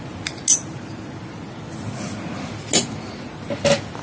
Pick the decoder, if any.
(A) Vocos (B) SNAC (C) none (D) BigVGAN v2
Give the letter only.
C